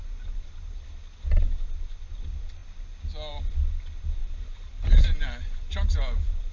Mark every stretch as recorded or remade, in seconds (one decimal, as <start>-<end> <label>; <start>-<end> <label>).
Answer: 0.0-4.2 recorded; 4.2-5.7 remade; 5.7-6.5 recorded